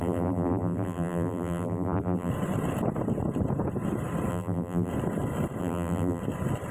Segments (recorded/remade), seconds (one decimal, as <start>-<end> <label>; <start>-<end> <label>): 0.0-2.3 remade; 2.3-4.3 recorded; 4.3-4.9 remade; 4.9-5.6 recorded; 5.6-6.2 remade; 6.2-6.7 recorded